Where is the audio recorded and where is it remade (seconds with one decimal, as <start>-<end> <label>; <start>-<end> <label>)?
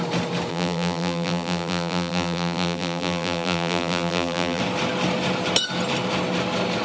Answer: 0.0-0.5 recorded; 0.5-4.6 remade; 4.6-6.8 recorded